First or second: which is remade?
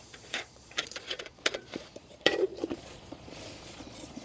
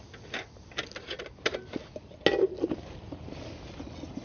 first